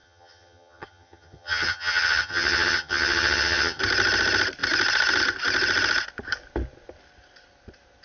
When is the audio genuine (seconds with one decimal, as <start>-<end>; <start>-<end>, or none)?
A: 3.8-8.0

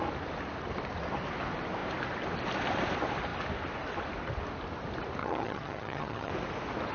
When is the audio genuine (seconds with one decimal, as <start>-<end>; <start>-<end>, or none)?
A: 0.0-5.2; 6.3-6.9